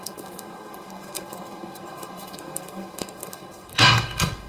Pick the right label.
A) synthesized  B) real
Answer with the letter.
A